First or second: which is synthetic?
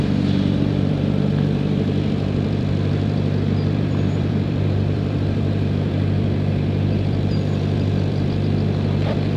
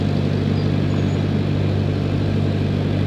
first